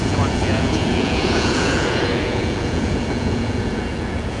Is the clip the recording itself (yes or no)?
no